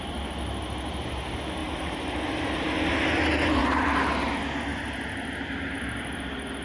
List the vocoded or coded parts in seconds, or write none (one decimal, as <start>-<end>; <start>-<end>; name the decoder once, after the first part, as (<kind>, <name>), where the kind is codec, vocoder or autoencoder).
1.6-2.2 (vocoder, BigVGAN v2); 3.6-4.3